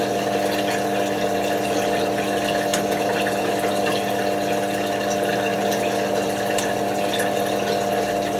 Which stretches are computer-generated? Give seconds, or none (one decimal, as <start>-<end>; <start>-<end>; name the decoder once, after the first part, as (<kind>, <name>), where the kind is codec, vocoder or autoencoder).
none